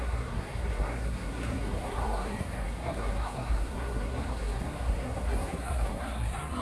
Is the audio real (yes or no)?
no